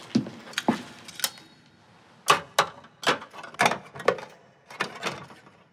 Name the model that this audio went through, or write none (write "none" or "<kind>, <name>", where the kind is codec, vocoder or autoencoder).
none